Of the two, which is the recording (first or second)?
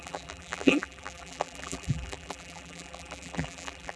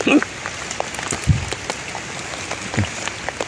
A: second